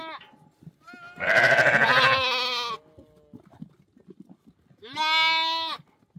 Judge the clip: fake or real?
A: real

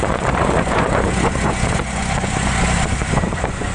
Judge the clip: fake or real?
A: fake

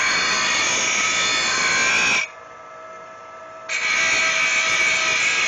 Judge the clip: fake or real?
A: real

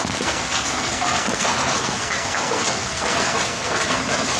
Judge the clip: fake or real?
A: fake